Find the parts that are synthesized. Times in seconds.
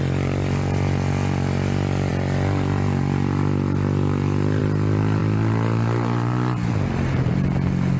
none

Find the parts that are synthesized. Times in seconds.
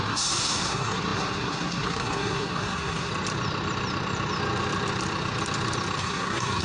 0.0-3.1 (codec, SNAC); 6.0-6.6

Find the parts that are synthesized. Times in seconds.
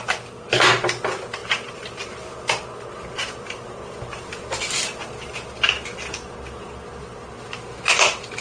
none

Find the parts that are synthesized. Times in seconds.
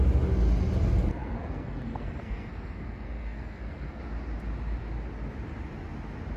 1.1-4.0 (codec, SNAC)